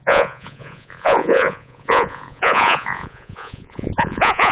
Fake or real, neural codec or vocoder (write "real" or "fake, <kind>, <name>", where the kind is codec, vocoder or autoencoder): fake, vocoder, Vocos